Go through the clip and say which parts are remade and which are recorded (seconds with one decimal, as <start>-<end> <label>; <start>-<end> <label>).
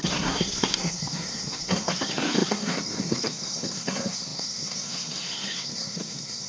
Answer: 0.0-6.5 remade